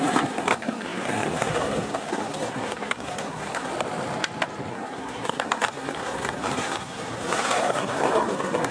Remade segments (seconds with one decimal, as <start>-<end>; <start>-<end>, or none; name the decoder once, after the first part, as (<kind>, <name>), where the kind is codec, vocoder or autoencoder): 0.0-3.7 (codec, SNAC); 4.7-8.7

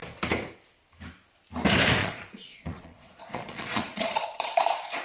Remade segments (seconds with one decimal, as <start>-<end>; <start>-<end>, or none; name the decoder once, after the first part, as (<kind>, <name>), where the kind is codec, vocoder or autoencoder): 2.0-5.0 (vocoder, Vocos)

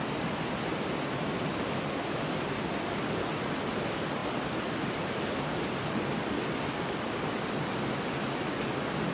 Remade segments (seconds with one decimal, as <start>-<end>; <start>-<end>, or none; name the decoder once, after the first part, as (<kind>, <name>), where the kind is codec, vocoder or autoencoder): none